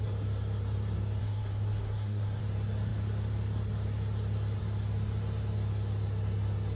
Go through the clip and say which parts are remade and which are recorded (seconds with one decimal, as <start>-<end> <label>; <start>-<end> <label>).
0.0-1.2 recorded; 1.2-2.4 remade; 2.4-6.8 recorded